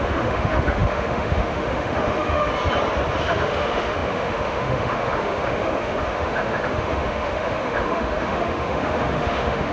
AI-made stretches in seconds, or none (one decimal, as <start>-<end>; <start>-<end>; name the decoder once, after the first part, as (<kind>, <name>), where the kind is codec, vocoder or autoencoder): 0.0-2.5 (autoencoder, DAC-VAE); 3.2-9.7